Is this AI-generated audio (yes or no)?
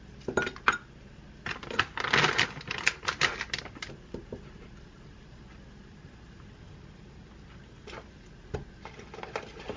no